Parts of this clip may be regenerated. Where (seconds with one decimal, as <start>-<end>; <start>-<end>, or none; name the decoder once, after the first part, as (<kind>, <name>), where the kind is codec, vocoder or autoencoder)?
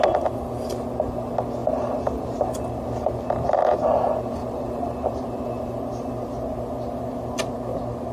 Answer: 1.6-2.5 (vocoder, BigVGAN v2); 4.4-5.2